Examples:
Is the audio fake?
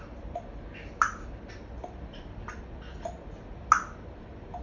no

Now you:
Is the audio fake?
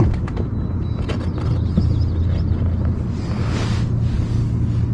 no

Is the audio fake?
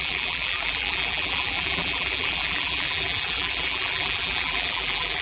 yes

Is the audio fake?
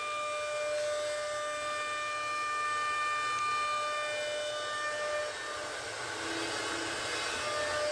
no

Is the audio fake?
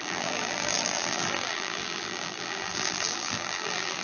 yes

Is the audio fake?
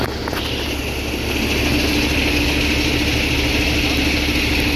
no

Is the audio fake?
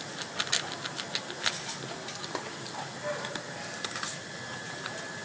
no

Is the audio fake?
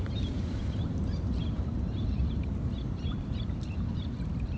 yes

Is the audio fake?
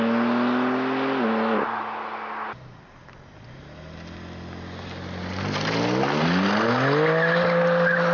no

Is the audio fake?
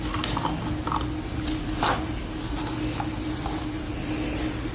no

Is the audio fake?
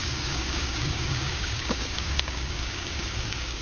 yes